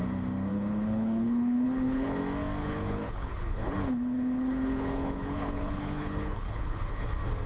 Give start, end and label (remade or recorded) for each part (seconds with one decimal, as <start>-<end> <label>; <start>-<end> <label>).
0.0-0.5 recorded; 0.5-2.2 remade; 2.2-2.6 recorded; 2.6-7.1 remade; 7.1-7.5 recorded

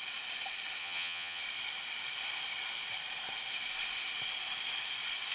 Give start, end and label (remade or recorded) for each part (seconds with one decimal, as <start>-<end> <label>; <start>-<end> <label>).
0.0-0.8 recorded; 0.8-1.4 remade; 1.4-5.3 recorded

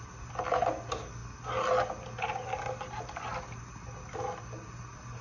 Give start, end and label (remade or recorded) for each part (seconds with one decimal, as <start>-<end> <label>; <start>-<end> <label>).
0.0-5.2 recorded